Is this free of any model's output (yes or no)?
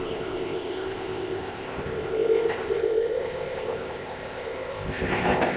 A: no